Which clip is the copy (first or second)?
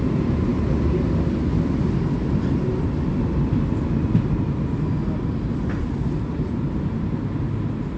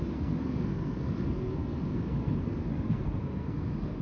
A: second